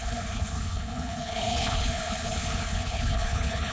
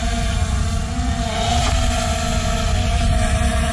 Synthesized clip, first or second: first